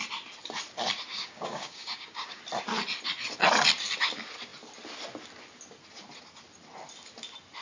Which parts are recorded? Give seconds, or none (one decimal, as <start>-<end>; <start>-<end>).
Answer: 0.0-1.1; 2.4-7.6